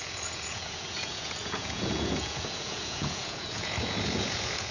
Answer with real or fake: fake